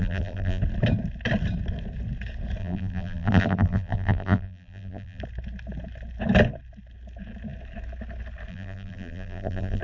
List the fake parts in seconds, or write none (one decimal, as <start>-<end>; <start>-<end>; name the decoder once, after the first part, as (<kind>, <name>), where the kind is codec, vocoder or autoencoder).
0.0-0.6 (vocoder, BigVGAN v2); 2.6-5.2; 8.5-9.8